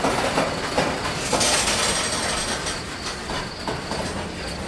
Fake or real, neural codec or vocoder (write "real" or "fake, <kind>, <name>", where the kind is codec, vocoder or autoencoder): real